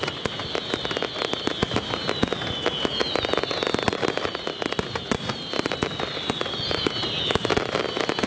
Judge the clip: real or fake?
real